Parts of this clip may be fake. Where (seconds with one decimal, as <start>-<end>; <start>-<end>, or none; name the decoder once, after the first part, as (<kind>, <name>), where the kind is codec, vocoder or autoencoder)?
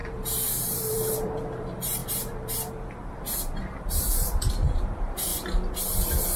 0.0-5.3 (vocoder, BigVGAN v2); 5.8-6.4